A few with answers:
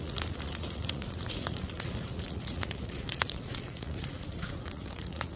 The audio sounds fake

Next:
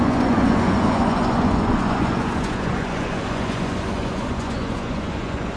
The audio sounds fake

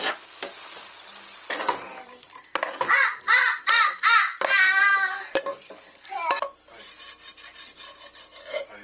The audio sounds real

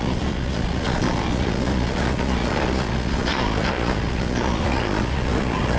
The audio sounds fake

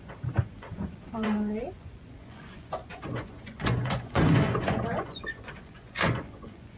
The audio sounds fake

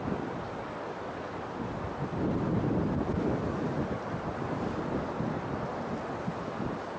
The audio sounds real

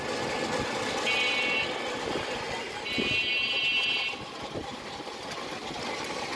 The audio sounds real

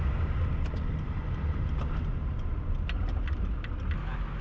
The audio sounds real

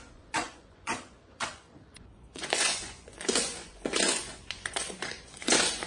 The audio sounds fake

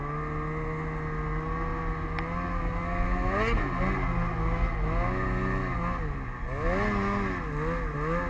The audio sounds real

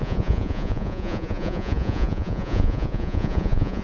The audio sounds fake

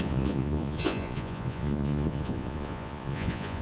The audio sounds fake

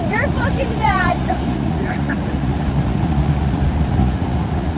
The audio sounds fake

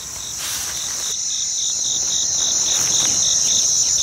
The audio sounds real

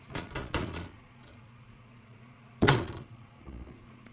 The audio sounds fake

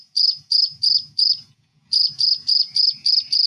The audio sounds fake